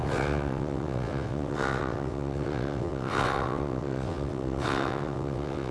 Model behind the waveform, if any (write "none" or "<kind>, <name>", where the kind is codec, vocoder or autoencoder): vocoder, WaveNeXt